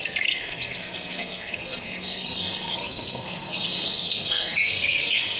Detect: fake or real fake